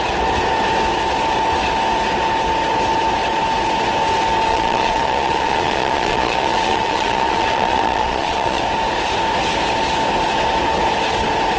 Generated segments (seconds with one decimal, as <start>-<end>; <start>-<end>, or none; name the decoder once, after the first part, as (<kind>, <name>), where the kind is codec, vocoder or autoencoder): 4.5-8.6 (vocoder, Vocos)